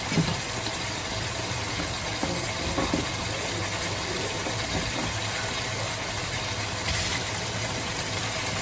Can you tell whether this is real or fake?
real